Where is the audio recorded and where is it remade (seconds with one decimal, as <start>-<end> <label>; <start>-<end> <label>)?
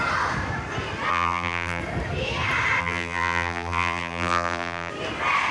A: 0.0-1.1 recorded; 1.1-1.8 remade; 1.8-2.8 recorded; 2.8-4.9 remade; 4.9-5.5 recorded